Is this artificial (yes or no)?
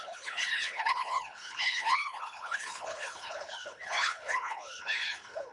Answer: yes